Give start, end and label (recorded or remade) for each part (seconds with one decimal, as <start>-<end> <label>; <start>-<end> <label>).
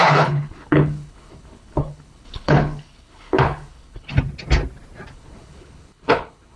0.0-4.1 remade; 4.1-5.1 recorded; 5.1-6.6 remade